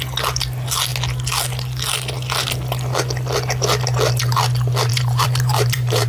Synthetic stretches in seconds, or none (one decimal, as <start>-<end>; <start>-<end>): 4.9-6.1